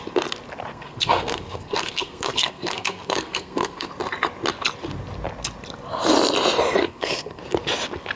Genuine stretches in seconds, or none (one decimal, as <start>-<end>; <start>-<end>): 0.0-0.7; 3.9-6.8; 7.4-8.2